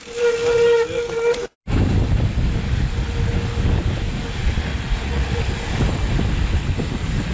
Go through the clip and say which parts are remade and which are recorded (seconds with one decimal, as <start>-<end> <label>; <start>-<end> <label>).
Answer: 0.0-4.7 recorded; 4.7-5.4 remade; 5.4-7.3 recorded